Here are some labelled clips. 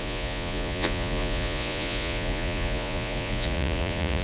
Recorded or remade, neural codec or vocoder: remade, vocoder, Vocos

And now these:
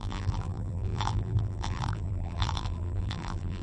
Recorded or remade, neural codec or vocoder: remade, vocoder, BigVGAN v2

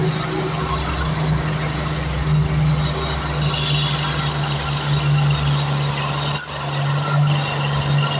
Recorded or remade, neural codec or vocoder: recorded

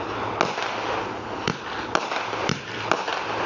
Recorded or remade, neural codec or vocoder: recorded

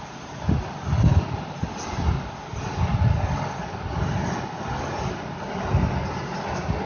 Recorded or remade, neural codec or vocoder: recorded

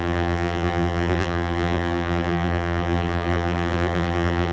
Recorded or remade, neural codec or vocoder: remade, vocoder, BigVGAN v2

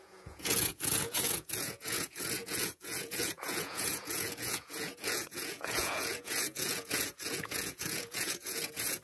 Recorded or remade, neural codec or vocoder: remade, vocoder, Vocos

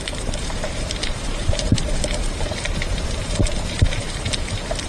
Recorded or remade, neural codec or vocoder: remade, vocoder, BigVGAN v2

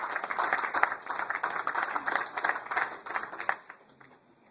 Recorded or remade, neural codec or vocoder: recorded